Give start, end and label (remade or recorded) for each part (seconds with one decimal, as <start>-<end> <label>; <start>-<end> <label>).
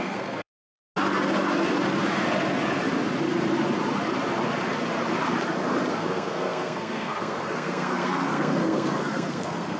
0.0-0.8 remade; 0.8-5.9 recorded; 5.9-9.8 remade